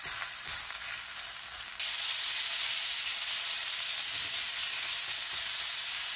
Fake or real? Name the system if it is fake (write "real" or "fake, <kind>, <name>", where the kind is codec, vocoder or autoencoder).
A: real